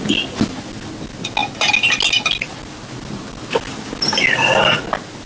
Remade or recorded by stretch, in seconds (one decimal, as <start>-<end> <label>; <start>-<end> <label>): 0.0-5.3 recorded